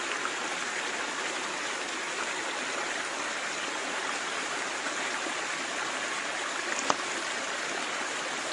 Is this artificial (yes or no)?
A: no